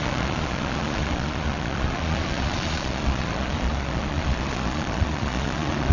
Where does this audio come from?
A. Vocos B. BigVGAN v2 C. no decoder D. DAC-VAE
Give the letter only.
A